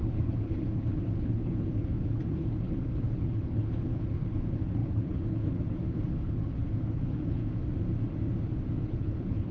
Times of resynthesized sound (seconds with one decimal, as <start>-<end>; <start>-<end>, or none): 0.0-7.4; 8.8-9.5